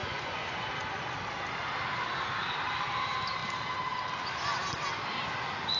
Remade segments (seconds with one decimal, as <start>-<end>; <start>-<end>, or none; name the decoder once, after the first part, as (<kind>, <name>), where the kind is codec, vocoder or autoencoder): 0.0-0.7 (vocoder, Vocos)

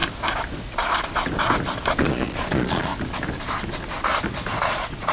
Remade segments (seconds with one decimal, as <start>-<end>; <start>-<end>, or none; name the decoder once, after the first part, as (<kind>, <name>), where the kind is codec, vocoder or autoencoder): 2.0-2.9 (vocoder, Vocos); 4.6-5.1

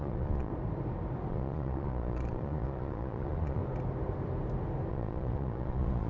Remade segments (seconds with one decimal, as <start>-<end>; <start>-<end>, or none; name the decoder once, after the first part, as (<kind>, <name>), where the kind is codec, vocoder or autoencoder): 0.0-0.5 (vocoder, Vocos); 1.3-3.6; 4.9-6.1

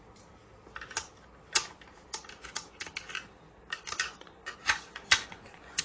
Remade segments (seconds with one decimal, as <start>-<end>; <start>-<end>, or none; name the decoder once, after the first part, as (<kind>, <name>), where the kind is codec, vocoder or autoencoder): 4.1-5.8 (vocoder, Vocos)

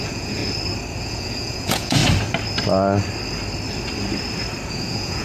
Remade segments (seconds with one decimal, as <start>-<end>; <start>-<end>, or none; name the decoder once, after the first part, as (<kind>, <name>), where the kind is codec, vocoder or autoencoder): 0.0-0.4 (vocoder, Vocos); 1.0-2.0; 4.7-5.2

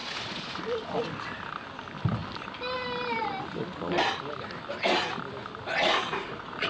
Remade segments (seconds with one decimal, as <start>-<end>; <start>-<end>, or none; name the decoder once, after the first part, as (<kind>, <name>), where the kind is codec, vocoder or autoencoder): 0.0-0.6 (vocoder, Vocos); 5.8-6.7

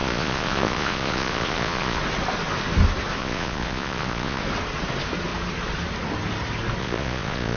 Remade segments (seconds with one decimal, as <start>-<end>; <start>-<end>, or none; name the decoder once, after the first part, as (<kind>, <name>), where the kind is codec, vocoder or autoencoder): 0.0-2.0 (vocoder, Vocos); 3.2-4.4; 6.8-7.6